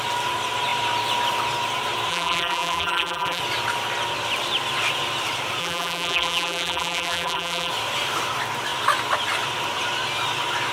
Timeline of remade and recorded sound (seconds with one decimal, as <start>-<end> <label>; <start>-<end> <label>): 0.0-2.1 recorded; 2.1-3.4 remade; 3.4-5.6 recorded; 5.6-7.7 remade; 7.7-10.7 recorded